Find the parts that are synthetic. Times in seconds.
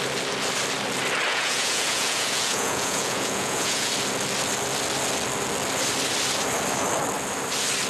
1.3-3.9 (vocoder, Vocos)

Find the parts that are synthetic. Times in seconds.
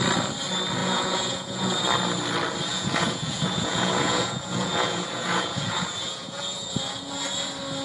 0.8-1.8 (vocoder, Vocos); 2.7-7.1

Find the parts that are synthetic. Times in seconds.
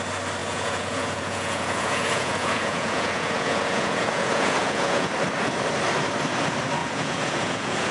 0.4-5.1 (vocoder, Vocos); 6.8-7.9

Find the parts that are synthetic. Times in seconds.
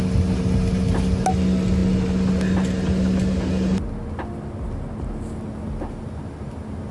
none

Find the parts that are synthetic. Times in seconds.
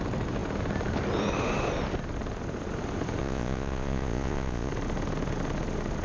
3.2-4.7 (vocoder, Vocos)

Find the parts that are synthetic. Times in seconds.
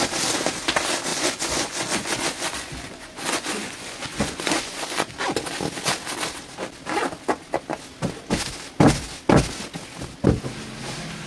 1.1-5.1 (vocoder, Vocos)